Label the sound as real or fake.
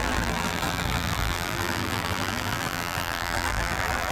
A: fake